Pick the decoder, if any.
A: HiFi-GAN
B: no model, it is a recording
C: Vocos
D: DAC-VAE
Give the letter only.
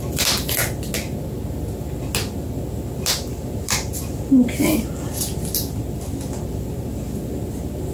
B